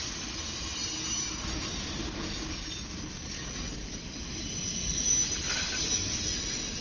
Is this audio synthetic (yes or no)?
no